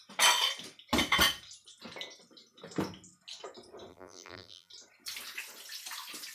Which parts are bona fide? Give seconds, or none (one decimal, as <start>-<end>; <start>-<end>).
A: 0.0-3.9; 4.7-6.3